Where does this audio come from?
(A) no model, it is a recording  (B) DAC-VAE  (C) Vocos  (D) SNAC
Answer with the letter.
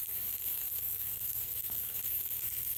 D